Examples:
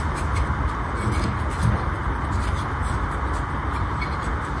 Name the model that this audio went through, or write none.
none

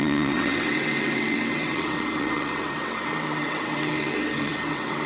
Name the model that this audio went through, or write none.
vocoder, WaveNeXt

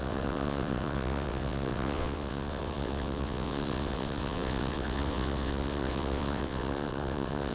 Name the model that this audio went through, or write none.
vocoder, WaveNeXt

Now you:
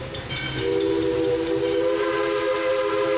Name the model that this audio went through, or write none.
none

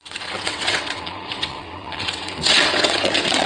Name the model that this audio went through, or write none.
vocoder, WaveNeXt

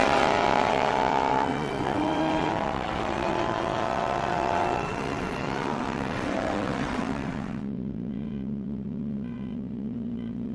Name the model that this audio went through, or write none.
vocoder, WaveNeXt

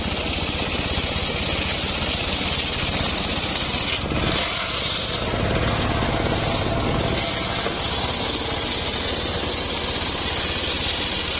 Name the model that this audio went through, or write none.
none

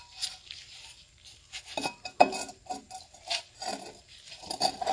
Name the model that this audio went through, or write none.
none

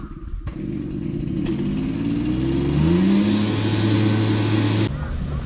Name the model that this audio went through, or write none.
none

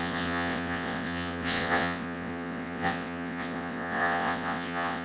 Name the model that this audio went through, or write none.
vocoder, WaveNeXt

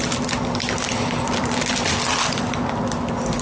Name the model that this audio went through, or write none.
none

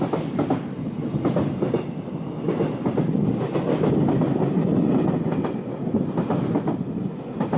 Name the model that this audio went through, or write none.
none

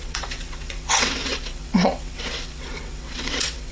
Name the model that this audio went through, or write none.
vocoder, WaveNeXt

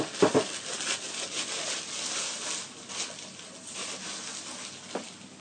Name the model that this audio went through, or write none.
none